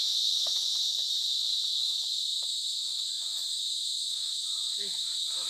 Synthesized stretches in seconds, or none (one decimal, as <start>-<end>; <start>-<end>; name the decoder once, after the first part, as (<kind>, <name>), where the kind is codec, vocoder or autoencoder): 0.0-0.8 (autoencoder, DAC-VAE); 1.8-5.1